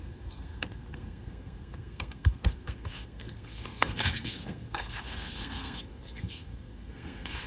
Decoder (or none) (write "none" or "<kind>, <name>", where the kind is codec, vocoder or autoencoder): codec, SNAC